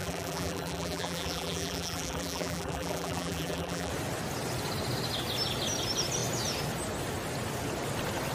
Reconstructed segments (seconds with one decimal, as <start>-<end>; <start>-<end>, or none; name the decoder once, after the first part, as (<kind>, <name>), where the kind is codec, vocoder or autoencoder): 0.0-3.9 (vocoder, BigVGAN v2)